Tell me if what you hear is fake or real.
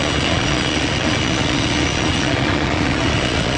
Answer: fake